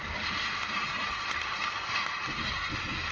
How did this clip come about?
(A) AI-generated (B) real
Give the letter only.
B